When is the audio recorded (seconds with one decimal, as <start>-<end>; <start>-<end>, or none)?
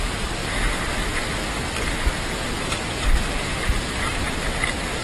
0.4-3.4